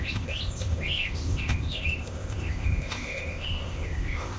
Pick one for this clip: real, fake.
fake